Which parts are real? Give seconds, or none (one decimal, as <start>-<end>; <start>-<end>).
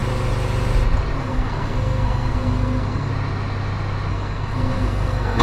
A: 0.0-1.2; 3.1-4.1